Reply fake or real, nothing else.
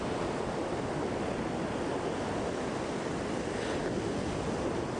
real